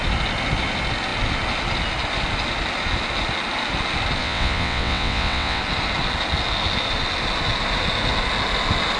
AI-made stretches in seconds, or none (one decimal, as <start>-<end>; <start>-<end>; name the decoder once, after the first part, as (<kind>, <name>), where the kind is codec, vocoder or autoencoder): 4.2-5.6 (vocoder, WaveNeXt)